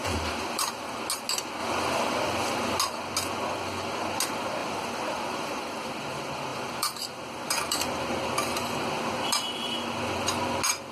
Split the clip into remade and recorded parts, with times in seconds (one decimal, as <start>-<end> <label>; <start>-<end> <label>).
0.0-1.0 remade; 1.0-1.6 recorded; 1.6-2.8 remade; 2.8-4.6 recorded; 4.6-5.9 remade; 5.9-6.5 recorded; 6.5-7.8 remade; 7.8-10.9 recorded